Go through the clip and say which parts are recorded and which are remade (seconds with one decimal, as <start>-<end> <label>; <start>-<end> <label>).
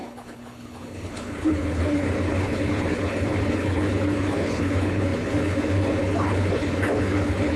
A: 0.0-7.6 remade